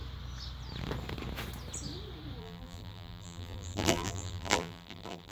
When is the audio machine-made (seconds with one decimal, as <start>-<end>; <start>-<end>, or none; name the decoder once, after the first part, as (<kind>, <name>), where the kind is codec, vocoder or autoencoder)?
2.4-5.3 (vocoder, BigVGAN v2)